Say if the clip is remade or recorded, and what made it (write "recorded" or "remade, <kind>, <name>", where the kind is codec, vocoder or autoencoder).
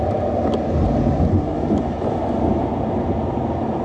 recorded